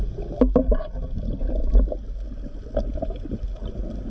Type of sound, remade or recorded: recorded